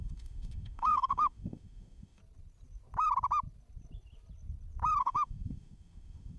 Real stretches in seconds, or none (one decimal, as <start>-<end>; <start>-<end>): 2.2-5.0